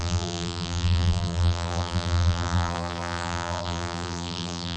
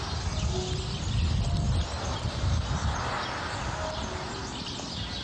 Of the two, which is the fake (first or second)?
first